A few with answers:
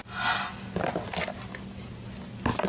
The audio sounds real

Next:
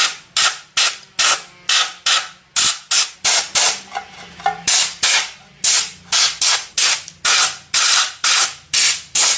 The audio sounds real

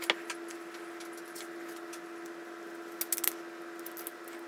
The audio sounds real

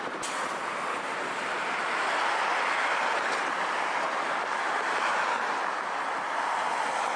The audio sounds real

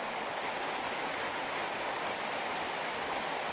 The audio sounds real